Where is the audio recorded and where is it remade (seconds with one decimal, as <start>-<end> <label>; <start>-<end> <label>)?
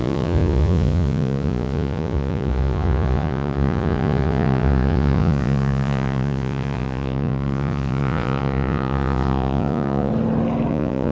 0.0-10.1 remade; 10.1-10.7 recorded; 10.7-11.1 remade